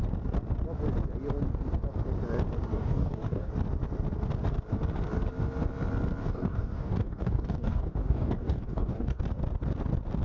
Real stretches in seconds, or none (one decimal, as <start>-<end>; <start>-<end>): 0.0-2.7; 3.5-6.2; 9.2-10.2